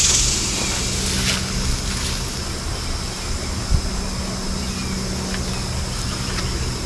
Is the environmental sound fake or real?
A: real